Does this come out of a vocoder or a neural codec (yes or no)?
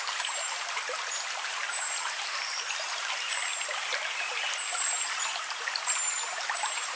yes